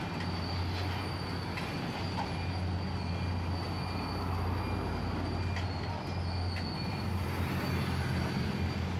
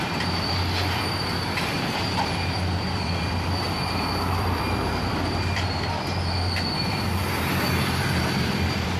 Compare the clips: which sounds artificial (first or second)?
second